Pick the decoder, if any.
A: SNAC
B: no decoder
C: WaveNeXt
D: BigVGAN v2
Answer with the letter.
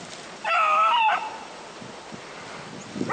B